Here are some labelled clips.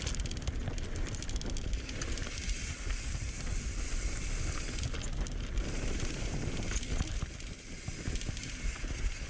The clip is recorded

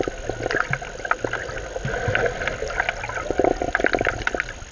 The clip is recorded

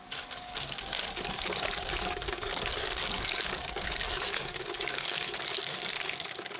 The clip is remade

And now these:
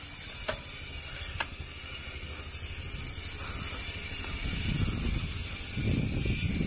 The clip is recorded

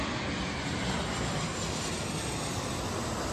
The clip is recorded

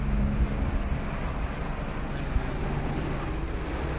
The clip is recorded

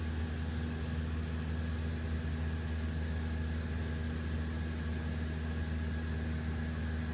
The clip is recorded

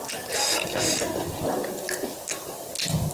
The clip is recorded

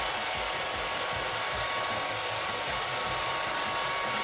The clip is recorded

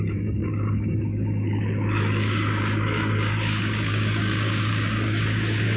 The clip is remade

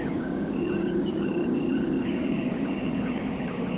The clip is remade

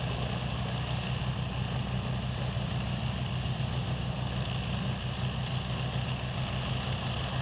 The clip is recorded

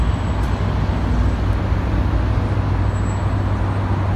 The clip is recorded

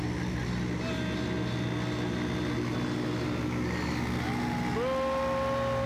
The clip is recorded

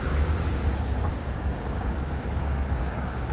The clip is remade